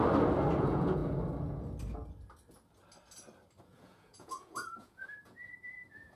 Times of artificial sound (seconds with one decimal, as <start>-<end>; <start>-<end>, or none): 0.6-1.0; 3.6-6.2